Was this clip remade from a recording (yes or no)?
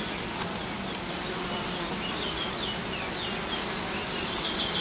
no